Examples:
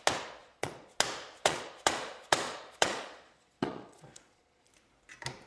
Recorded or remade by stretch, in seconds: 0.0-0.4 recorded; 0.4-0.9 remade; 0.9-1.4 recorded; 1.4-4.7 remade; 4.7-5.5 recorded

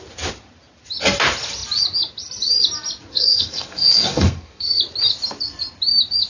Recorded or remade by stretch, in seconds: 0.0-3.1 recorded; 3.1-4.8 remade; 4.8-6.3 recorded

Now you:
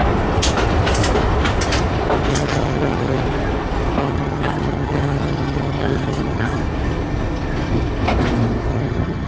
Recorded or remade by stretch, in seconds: 0.0-2.3 recorded; 2.3-3.2 remade; 3.2-4.0 recorded; 4.0-6.6 remade; 6.6-8.7 recorded; 8.7-9.3 remade

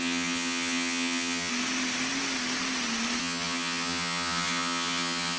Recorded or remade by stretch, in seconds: 0.0-1.5 remade; 1.5-3.2 recorded; 3.2-5.4 remade

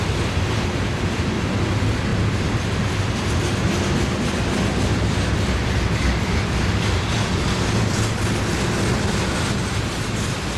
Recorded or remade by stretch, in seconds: 0.0-10.6 recorded

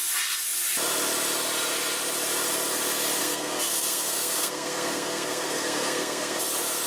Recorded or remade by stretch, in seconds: 0.0-3.2 recorded; 3.2-6.4 remade; 6.4-6.9 recorded